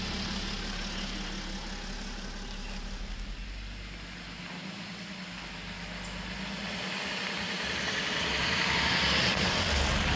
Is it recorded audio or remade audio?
recorded